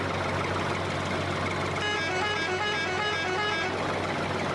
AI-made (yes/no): no